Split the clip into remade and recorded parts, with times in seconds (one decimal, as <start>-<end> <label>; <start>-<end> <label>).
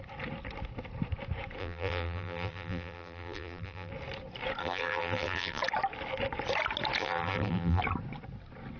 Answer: 0.0-1.6 recorded; 1.6-3.9 remade; 3.9-4.6 recorded; 4.6-5.6 remade; 5.6-7.0 recorded; 7.0-7.8 remade; 7.8-8.8 recorded